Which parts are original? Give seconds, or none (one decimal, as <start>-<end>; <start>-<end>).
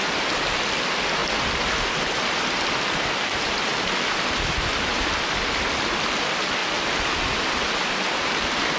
0.0-8.8